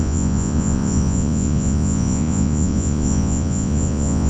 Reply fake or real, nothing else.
fake